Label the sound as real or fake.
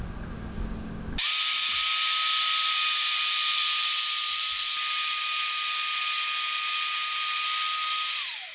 real